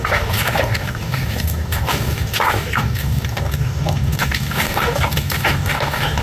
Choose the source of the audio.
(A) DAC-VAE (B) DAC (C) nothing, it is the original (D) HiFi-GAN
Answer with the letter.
B